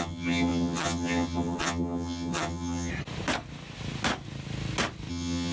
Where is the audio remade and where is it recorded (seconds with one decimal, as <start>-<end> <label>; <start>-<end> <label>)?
0.0-2.9 remade; 2.9-5.1 recorded; 5.1-5.5 remade